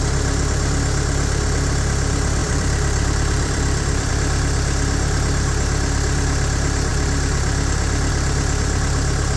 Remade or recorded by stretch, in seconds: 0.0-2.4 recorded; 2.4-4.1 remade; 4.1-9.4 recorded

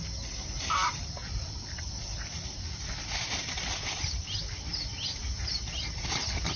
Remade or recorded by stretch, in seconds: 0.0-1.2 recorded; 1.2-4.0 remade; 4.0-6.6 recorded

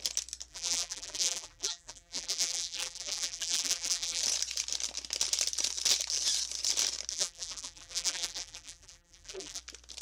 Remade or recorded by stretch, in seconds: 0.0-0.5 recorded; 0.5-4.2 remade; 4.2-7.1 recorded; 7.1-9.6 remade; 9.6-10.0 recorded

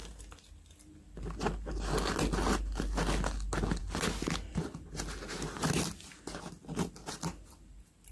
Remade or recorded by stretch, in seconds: 0.0-8.1 recorded

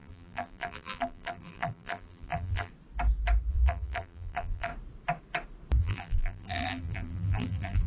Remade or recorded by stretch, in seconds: 0.0-2.7 remade; 2.7-3.5 recorded; 3.5-4.7 remade; 4.7-5.8 recorded; 5.8-7.9 remade

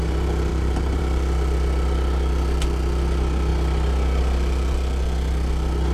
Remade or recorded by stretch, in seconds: 0.0-0.5 recorded; 0.5-1.0 remade; 1.0-5.9 recorded

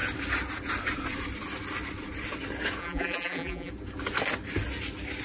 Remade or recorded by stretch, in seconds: 0.0-2.8 recorded; 2.8-3.7 remade; 3.7-5.2 recorded

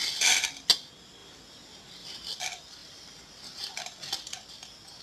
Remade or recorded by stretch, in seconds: 0.0-5.0 recorded